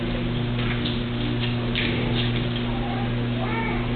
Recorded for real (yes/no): yes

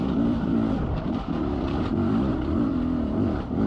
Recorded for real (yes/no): no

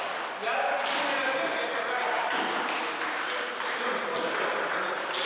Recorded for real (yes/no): yes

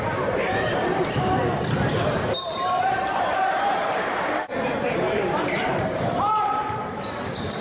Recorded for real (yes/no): no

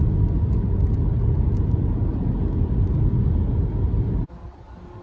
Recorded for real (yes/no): yes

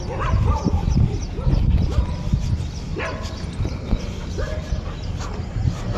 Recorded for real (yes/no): yes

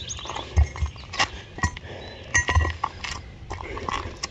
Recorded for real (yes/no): yes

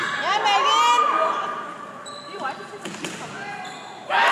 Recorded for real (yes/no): yes